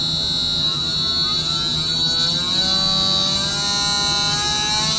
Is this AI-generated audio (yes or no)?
no